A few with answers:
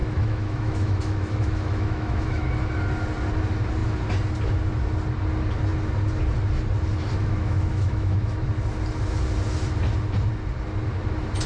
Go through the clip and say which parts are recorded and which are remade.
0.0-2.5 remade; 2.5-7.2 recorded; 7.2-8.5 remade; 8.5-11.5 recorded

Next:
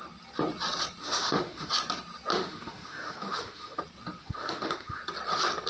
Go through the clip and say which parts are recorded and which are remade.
0.0-1.0 recorded; 1.0-1.7 remade; 1.7-2.3 recorded; 2.3-3.8 remade; 3.8-4.2 recorded; 4.2-5.0 remade; 5.0-5.7 recorded

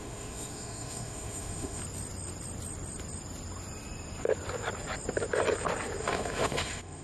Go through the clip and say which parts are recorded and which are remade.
0.0-1.8 remade; 1.8-6.0 recorded; 6.0-7.0 remade

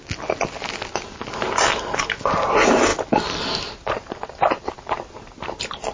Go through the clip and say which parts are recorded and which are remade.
0.0-5.9 recorded